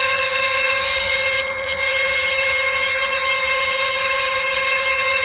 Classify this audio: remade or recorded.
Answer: remade